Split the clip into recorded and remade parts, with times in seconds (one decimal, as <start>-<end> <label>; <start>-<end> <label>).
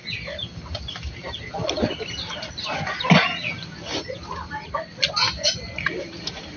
0.0-6.6 recorded